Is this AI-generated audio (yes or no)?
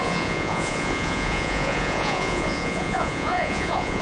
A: yes